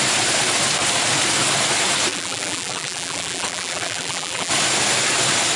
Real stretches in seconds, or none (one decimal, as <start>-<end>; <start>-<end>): 0.0-2.1; 4.5-5.6